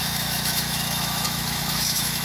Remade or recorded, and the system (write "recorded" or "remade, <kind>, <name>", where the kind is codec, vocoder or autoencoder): remade, autoencoder, DAC-VAE